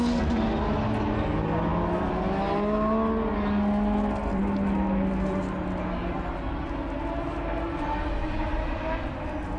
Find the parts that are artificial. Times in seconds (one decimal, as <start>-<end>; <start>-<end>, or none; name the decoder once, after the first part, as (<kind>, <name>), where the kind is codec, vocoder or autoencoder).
none